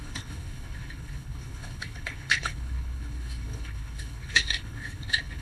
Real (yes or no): no